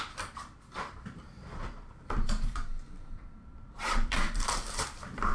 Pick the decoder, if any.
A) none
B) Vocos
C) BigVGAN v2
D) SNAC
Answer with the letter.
C